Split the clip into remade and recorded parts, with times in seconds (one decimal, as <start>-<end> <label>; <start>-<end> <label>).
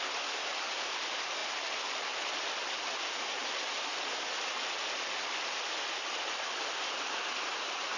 0.0-8.0 recorded